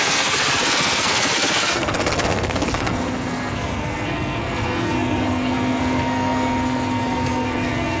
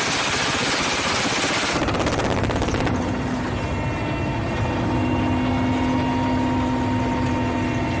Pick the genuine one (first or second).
second